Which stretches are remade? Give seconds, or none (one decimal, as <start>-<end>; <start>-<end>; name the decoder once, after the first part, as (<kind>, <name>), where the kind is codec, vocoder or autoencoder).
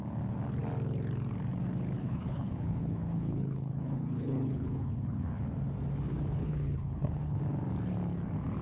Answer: 2.0-5.4 (codec, HILCodec); 6.4-7.4